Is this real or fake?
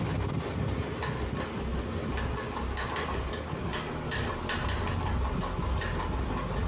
real